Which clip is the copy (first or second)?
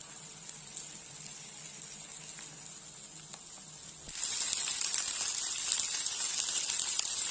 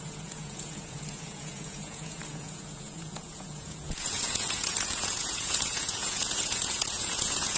second